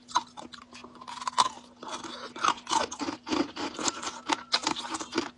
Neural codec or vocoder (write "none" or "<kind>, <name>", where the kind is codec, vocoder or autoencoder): none